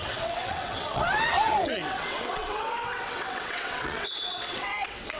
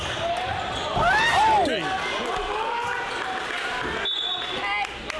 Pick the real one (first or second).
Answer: second